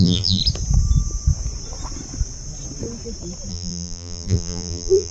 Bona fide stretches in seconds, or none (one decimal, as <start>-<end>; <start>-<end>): 0.4-3.5